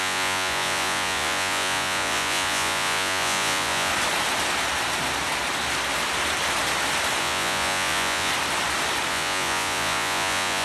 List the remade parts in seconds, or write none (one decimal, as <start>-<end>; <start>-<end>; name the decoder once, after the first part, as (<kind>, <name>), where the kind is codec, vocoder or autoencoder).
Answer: 0.0-3.9 (vocoder, Vocos); 7.2-8.3; 9.1-10.6